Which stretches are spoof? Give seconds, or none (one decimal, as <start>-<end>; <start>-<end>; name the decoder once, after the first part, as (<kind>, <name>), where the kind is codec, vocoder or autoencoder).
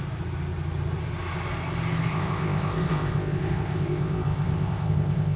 2.1-5.4 (codec, ZipCodec)